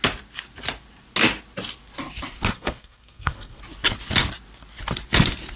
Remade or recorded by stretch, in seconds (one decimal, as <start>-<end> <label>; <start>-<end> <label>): 0.0-2.5 recorded; 2.5-3.6 remade; 3.6-5.6 recorded